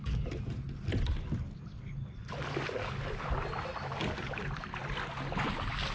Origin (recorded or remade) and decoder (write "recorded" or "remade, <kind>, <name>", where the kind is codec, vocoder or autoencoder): recorded